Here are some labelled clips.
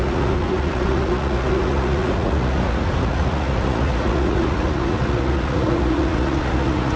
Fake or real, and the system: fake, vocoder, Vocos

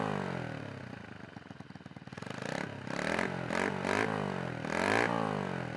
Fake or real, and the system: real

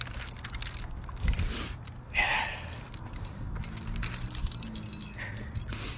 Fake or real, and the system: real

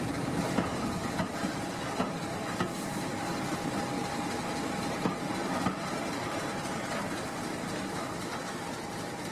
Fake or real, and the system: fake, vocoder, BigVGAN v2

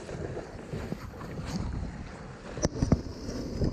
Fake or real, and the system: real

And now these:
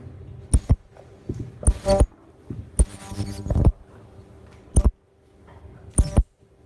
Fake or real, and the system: real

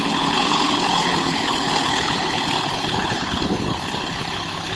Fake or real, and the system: fake, codec, HILCodec